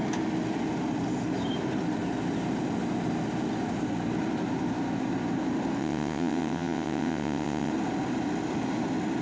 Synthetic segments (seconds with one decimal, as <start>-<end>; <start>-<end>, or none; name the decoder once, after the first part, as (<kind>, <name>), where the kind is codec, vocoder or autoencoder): 5.8-7.7 (vocoder, WaveNeXt)